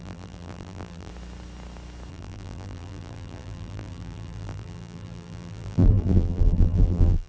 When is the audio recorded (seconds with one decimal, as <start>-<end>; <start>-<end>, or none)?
1.1-2.1